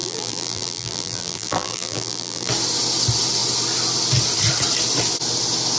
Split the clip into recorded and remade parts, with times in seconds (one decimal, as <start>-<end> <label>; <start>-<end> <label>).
0.0-2.5 remade; 2.5-5.8 recorded

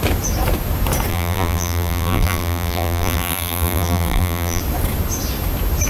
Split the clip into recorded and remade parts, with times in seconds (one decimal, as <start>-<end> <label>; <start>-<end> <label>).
0.0-1.1 recorded; 1.1-4.6 remade; 4.6-5.9 recorded

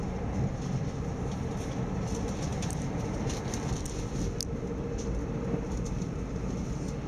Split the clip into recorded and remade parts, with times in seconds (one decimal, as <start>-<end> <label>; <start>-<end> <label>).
0.0-2.5 recorded; 2.5-3.7 remade; 3.7-7.1 recorded

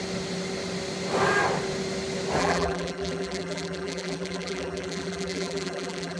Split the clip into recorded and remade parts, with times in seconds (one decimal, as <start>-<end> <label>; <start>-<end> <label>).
0.0-2.4 recorded; 2.4-6.2 remade